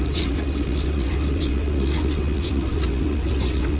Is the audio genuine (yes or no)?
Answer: no